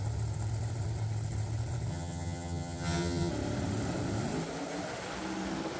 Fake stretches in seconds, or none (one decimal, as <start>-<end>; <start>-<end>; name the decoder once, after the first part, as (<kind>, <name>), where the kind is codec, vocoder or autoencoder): 1.9-3.3 (vocoder, HiFi-GAN)